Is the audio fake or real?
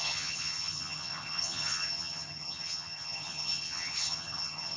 fake